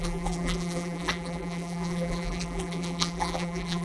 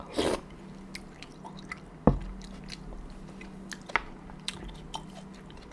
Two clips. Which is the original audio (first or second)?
second